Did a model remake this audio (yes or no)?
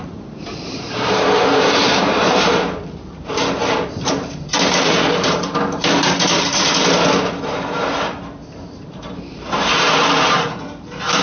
yes